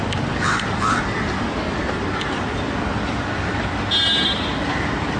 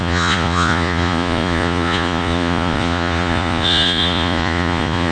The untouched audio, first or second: first